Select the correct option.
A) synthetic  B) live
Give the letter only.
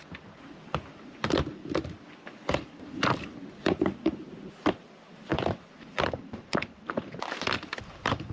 A